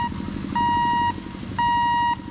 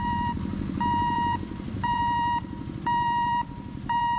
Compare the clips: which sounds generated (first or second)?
second